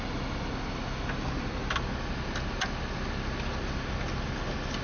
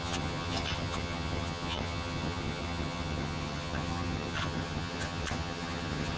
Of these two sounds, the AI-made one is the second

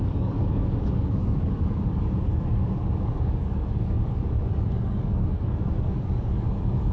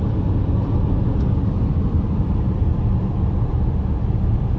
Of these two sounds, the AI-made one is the first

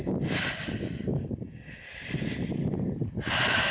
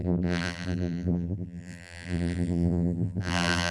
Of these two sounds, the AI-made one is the second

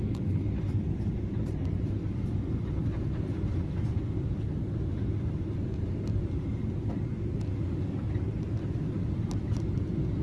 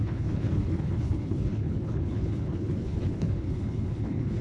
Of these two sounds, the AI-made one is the second